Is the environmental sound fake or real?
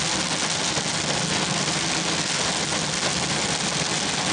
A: real